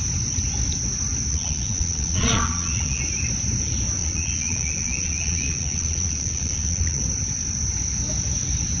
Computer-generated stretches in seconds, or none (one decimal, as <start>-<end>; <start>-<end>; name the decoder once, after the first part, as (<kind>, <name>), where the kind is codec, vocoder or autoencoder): 1.3-3.0 (vocoder, Vocos); 4.0-7.0